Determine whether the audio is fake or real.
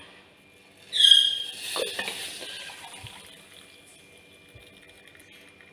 real